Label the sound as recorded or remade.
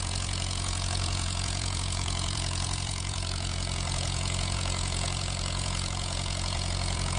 remade